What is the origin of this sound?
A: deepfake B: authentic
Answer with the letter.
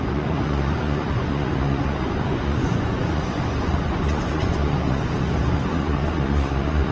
A